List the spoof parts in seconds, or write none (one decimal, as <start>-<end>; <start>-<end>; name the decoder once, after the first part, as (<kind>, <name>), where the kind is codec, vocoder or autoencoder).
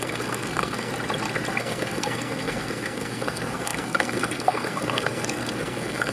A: 0.0-0.9 (codec, SNAC); 1.6-6.1